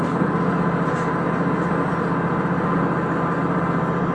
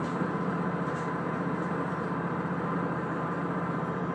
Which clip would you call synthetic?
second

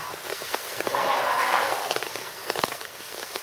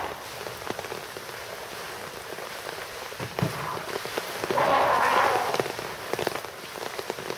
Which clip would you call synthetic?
first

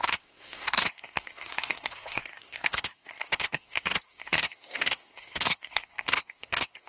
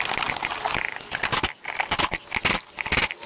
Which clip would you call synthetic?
first